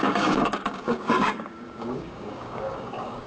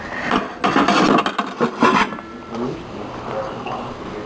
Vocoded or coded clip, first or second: first